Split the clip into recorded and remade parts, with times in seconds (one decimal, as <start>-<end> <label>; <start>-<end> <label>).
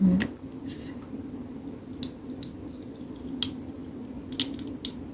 0.0-5.1 recorded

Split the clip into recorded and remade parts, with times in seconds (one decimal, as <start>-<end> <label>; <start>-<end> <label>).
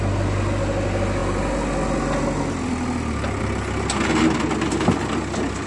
0.0-5.7 recorded